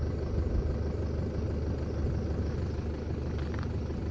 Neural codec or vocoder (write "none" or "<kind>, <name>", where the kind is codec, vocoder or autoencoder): none